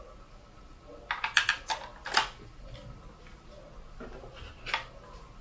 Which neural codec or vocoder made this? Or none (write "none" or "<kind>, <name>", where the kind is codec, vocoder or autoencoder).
none